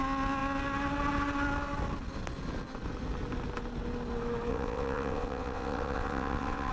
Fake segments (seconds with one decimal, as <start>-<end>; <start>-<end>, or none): 4.5-6.7

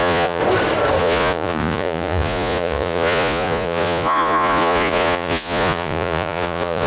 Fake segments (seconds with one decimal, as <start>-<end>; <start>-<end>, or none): 0.0-0.4; 1.0-6.9

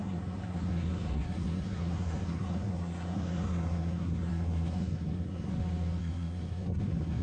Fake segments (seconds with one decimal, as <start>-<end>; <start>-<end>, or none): 0.0-5.5; 6.0-7.2

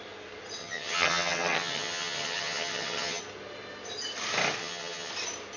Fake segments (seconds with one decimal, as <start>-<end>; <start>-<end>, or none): 0.6-3.2; 4.6-5.1

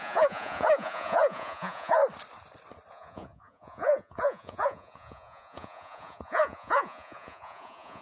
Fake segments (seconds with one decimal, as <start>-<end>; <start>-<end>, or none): 0.0-2.0; 2.9-8.0

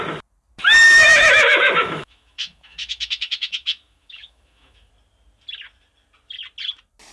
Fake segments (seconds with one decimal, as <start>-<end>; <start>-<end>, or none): 0.6-4.9

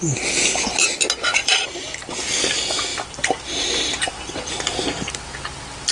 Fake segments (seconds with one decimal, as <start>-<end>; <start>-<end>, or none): 1.3-2.1; 2.9-4.5

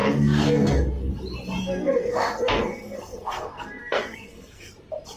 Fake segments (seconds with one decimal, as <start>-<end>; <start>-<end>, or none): 0.0-1.1; 1.6-4.7